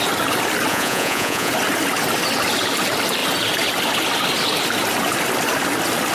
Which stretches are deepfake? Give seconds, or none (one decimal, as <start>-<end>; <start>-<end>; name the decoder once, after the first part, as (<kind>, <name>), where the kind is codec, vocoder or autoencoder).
0.7-1.5 (vocoder, Vocos)